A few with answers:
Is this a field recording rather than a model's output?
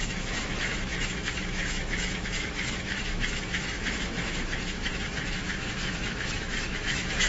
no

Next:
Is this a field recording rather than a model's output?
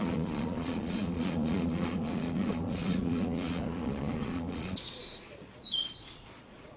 no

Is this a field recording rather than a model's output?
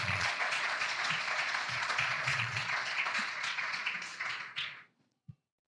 no